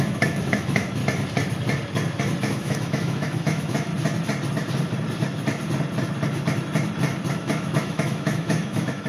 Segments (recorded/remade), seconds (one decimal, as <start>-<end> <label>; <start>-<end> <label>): 0.0-1.0 remade; 1.0-2.4 recorded; 2.4-3.9 remade; 3.9-7.3 recorded; 7.3-9.1 remade